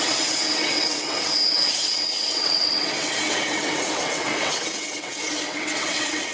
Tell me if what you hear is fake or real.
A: fake